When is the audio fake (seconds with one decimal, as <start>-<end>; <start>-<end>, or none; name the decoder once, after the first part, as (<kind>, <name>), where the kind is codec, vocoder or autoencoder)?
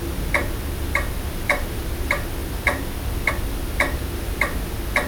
none